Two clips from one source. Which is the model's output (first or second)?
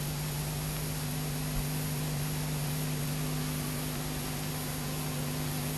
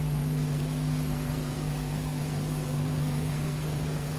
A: second